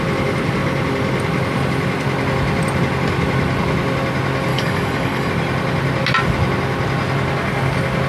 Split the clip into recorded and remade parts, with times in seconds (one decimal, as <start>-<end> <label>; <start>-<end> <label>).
0.0-4.5 recorded; 4.5-5.3 remade; 5.3-8.1 recorded